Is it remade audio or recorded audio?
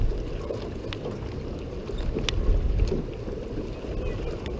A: recorded